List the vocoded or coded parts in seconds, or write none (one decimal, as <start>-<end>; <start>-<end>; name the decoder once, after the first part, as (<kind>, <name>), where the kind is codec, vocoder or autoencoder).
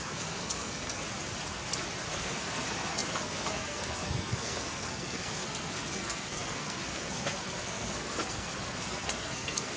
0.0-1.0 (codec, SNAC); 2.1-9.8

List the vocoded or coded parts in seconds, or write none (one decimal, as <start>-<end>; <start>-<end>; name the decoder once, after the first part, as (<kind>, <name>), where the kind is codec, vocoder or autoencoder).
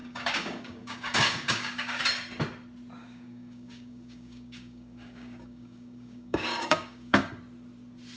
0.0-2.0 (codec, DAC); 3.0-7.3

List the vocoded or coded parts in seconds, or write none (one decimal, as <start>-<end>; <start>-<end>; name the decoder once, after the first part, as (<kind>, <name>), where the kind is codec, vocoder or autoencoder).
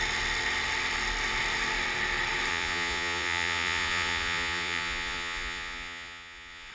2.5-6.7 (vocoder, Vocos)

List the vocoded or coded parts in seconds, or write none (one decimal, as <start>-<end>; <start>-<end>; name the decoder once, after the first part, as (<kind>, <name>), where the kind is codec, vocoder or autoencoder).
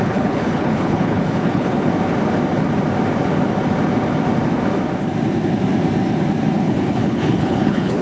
0.0-1.9 (codec, HILCodec); 6.6-8.0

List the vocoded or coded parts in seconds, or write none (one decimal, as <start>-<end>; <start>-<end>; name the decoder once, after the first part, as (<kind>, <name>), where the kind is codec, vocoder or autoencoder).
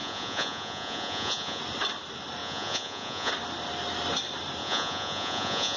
0.0-1.6 (vocoder, Vocos); 2.4-3.3; 4.6-5.8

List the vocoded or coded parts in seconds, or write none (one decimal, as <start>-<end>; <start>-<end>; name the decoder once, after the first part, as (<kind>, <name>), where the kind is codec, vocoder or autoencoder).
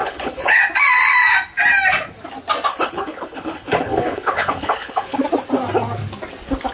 0.0-0.6 (codec, HILCodec); 2.7-5.2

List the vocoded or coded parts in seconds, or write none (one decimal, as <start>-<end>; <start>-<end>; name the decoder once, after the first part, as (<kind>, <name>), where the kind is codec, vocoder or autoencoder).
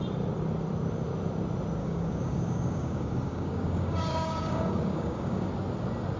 1.8-5.5 (codec, DAC)